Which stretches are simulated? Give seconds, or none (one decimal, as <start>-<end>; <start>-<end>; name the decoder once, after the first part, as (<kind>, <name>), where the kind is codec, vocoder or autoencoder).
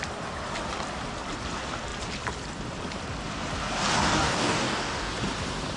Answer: 4.1-5.1 (codec, DAC)